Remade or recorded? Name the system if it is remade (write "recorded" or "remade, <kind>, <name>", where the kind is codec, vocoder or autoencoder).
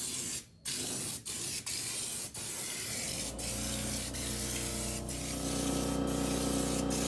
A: recorded